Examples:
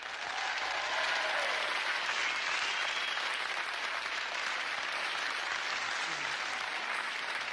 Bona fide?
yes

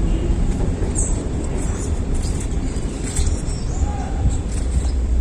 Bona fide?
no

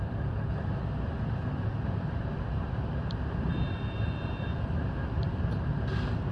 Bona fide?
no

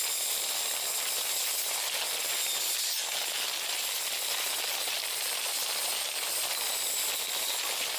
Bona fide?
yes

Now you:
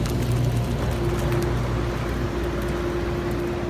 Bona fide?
yes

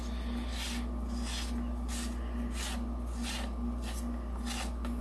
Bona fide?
yes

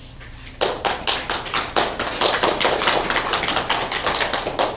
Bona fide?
yes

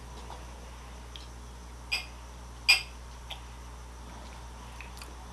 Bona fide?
yes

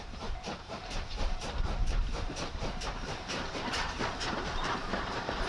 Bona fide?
no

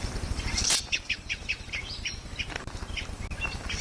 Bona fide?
yes